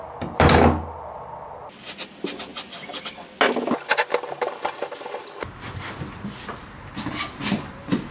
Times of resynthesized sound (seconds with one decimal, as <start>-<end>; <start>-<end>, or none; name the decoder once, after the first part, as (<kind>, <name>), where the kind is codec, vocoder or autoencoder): none